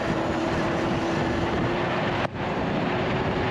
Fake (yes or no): yes